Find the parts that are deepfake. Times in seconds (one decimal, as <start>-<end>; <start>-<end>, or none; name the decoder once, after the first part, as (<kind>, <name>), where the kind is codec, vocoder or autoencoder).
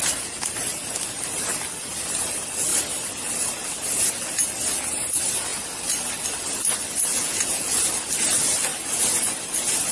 7.1-7.8 (vocoder, Vocos)